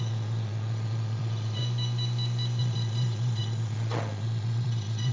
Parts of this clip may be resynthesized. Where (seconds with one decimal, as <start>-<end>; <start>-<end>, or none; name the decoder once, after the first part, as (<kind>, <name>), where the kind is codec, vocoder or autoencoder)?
0.0-1.6 (vocoder, Vocos); 2.6-5.1